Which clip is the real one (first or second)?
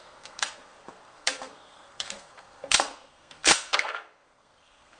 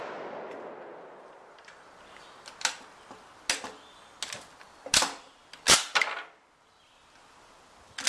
second